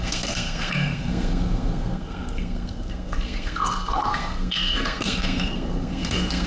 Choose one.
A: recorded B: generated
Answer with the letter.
B